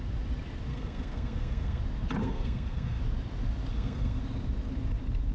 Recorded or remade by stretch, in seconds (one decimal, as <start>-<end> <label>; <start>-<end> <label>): 0.0-0.7 recorded; 0.7-1.8 remade; 1.8-2.2 recorded; 2.2-3.0 remade; 3.0-3.7 recorded; 3.7-4.2 remade; 4.2-5.3 recorded